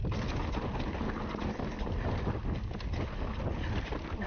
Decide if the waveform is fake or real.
real